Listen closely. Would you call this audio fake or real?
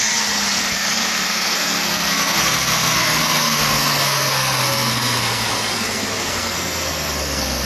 fake